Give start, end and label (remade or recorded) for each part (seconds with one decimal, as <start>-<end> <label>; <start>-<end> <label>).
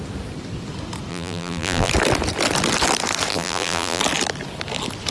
0.0-1.1 recorded; 1.1-1.9 remade; 1.9-3.3 recorded; 3.3-4.0 remade; 4.0-5.1 recorded